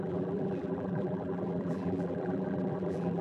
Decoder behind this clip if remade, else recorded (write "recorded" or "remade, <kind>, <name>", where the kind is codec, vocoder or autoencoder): remade, vocoder, BigVGAN v2